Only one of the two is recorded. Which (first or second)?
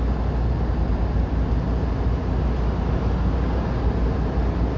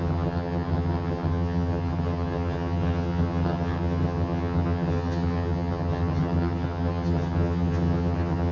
first